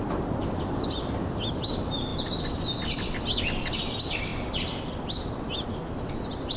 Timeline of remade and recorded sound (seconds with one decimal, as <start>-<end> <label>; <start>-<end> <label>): 0.0-6.6 recorded